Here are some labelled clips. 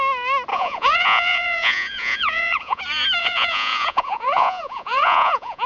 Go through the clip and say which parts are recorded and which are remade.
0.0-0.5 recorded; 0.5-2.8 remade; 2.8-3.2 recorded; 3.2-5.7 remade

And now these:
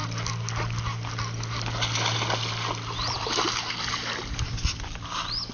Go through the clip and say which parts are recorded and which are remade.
0.0-5.5 recorded

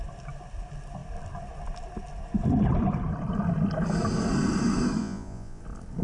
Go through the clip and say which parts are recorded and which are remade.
0.0-5.0 recorded; 5.0-5.6 remade; 5.6-6.0 recorded

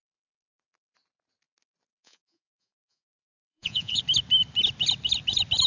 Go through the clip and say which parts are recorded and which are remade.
0.0-1.9 recorded; 1.9-4.0 remade; 4.0-5.7 recorded

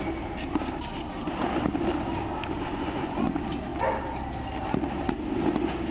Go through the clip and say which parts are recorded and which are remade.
0.0-2.6 recorded; 2.6-3.3 remade; 3.3-5.9 recorded

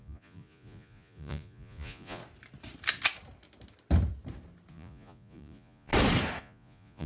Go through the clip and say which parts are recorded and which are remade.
0.0-2.2 remade; 2.2-4.7 recorded; 4.7-5.9 remade; 5.9-6.4 recorded; 6.4-7.1 remade